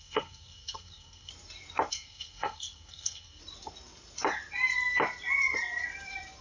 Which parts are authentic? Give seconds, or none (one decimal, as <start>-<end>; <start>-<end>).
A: 1.3-1.9; 3.4-6.4